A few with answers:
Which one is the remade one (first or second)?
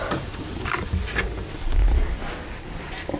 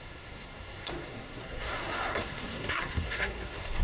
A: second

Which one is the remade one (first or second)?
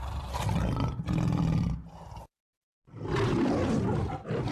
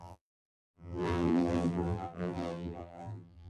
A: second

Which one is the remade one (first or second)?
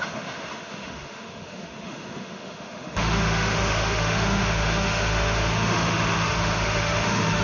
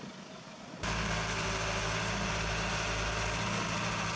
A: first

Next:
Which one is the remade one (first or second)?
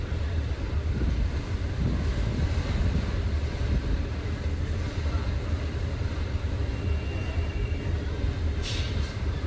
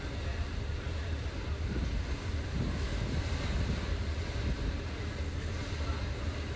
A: first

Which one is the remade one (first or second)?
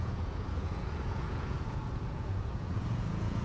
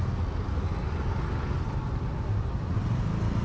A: first